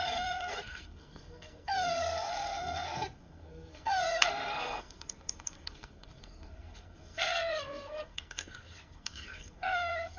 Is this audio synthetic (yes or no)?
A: yes